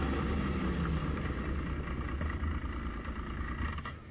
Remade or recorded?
recorded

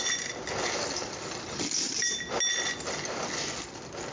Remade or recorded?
recorded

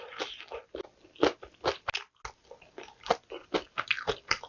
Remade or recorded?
recorded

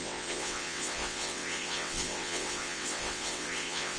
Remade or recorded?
remade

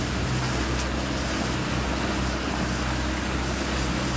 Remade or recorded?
recorded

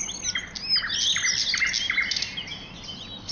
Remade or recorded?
recorded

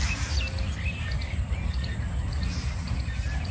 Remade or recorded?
recorded